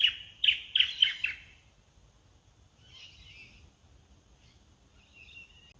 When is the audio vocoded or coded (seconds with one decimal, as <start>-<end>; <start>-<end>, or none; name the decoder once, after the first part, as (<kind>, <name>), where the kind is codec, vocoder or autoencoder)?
none